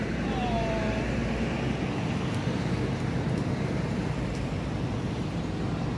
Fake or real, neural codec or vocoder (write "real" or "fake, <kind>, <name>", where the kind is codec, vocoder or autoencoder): fake, vocoder, BigVGAN v2